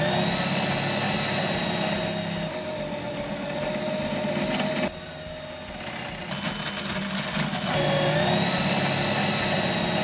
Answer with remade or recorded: recorded